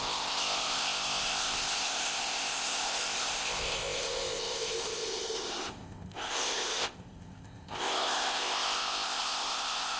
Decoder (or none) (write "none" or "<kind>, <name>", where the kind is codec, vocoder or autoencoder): codec, ZipCodec